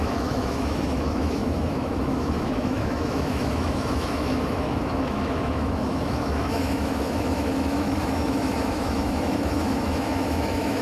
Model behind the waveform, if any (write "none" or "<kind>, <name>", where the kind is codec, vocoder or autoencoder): autoencoder, DAC-VAE